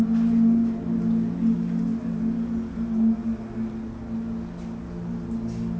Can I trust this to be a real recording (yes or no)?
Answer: yes